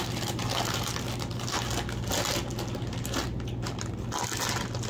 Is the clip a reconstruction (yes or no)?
no